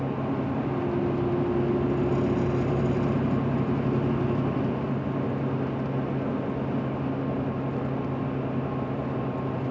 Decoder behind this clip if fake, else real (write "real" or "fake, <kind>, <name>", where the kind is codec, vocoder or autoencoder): real